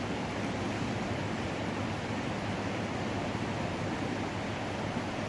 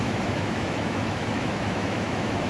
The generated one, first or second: second